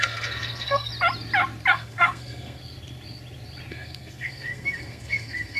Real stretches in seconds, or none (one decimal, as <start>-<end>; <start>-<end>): 0.9-1.7; 2.6-3.7